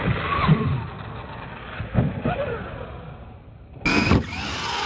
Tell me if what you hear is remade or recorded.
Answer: recorded